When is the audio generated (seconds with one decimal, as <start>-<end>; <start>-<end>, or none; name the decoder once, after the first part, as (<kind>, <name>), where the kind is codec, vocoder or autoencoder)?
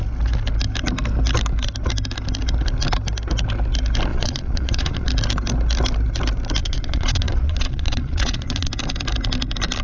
4.1-5.1 (vocoder, Vocos); 6.6-8.7